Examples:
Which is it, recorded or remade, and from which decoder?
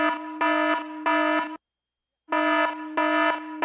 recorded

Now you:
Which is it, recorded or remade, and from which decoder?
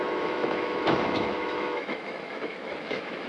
remade, autoencoder, DAC-VAE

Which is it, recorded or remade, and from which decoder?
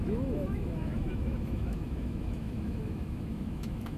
remade, autoencoder, DAC-VAE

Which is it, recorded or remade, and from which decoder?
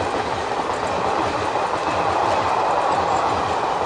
recorded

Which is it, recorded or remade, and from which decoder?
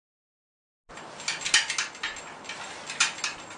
recorded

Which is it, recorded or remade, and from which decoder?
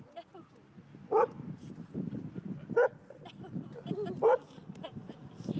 recorded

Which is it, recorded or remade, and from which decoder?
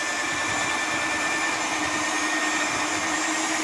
recorded